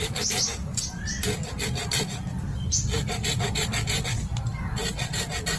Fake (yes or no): no